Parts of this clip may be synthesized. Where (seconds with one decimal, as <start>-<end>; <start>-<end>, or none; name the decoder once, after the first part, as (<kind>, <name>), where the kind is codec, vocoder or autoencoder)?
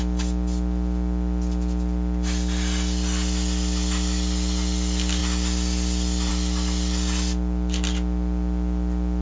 none